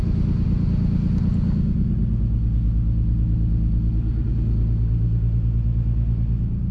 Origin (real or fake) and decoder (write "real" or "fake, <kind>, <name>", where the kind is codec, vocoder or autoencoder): real